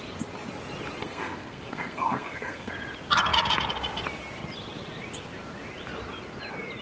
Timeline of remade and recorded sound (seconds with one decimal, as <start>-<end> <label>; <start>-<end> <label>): 0.0-1.0 recorded; 1.0-2.7 remade; 2.7-6.8 recorded